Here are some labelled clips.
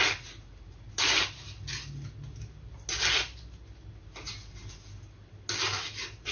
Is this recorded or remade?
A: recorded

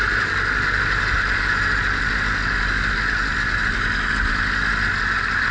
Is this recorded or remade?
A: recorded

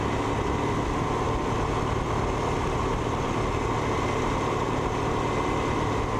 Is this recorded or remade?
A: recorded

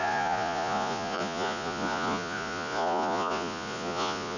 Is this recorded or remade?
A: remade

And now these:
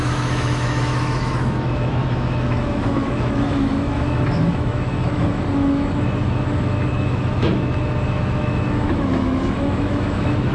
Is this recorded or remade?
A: remade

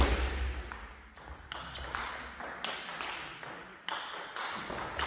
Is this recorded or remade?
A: recorded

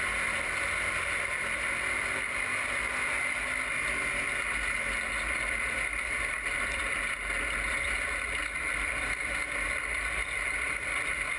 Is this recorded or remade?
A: recorded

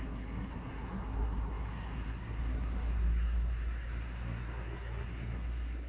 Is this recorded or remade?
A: remade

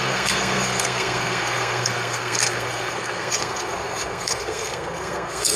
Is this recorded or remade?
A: remade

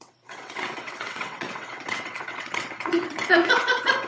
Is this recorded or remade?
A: remade